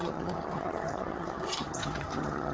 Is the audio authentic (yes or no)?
no